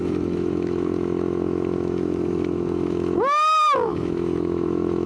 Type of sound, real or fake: fake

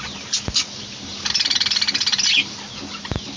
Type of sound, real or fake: real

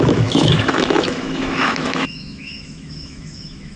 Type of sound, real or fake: fake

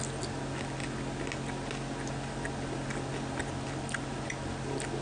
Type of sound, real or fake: real